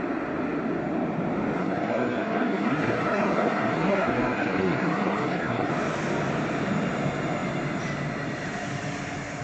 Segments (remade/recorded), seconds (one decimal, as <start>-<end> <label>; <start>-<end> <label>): 0.0-1.6 recorded; 1.6-5.7 remade; 5.7-9.4 recorded